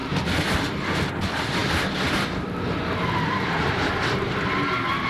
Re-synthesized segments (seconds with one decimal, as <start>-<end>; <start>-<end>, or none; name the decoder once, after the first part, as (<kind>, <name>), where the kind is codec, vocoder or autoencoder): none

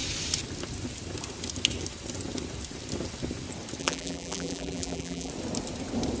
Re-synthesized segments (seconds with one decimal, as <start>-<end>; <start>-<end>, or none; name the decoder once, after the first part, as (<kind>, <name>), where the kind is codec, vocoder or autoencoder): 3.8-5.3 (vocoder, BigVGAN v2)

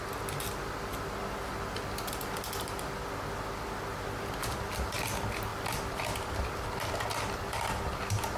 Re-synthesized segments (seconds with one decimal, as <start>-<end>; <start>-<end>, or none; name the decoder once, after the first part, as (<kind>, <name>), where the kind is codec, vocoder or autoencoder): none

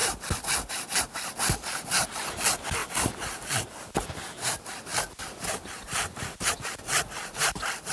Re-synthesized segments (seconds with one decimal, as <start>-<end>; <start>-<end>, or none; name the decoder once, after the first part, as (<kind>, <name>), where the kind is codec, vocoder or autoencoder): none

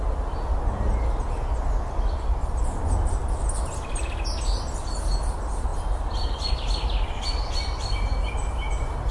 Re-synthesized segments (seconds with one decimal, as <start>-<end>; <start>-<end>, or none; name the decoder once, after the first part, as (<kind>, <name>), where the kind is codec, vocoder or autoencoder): none

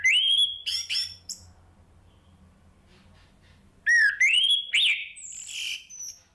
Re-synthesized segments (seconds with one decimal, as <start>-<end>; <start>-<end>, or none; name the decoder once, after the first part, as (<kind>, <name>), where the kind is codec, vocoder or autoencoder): 0.6-4.4 (vocoder, BigVGAN v2); 5.0-5.7

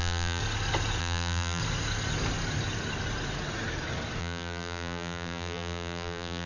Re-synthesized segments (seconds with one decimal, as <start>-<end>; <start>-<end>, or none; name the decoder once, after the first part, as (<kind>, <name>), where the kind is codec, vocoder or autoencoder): 0.0-0.4 (vocoder, BigVGAN v2); 1.0-1.6; 4.2-6.5

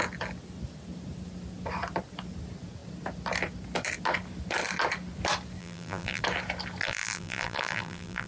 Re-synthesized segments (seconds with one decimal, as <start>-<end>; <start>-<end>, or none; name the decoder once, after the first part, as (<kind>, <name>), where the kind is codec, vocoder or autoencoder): 5.6-6.2 (vocoder, BigVGAN v2); 6.8-8.3